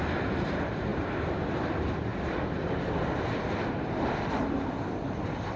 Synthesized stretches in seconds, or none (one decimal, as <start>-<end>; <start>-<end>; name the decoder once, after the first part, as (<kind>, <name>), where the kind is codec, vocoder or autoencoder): 0.0-2.1 (vocoder, BigVGAN v2)